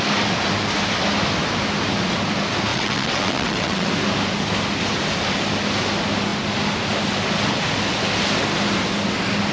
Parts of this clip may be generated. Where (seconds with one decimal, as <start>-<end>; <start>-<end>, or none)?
2.7-3.9